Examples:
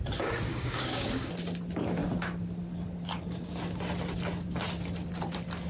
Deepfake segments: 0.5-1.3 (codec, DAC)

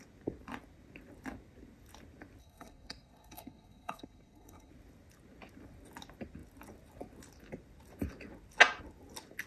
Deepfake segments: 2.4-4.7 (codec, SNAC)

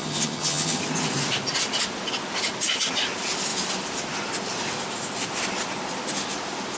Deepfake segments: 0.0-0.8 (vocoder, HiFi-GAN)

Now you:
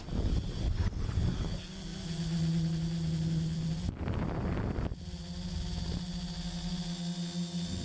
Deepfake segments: 1.9-4.0 (vocoder, BigVGAN v2)

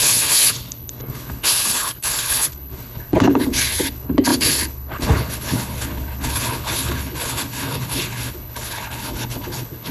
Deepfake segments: 0.0-9.9 (codec, HILCodec)

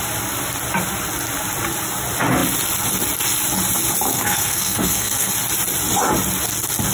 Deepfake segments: 4.1-5.3 (codec, SNAC)